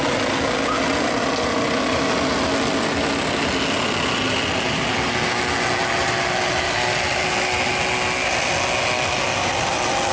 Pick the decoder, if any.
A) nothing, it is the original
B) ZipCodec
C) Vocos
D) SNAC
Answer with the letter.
A